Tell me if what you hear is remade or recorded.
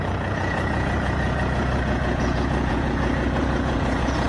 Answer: remade